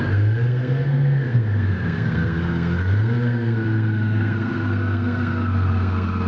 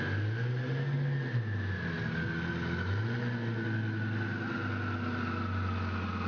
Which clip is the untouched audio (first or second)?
second